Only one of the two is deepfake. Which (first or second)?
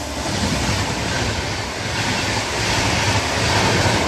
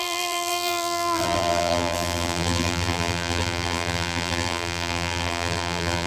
second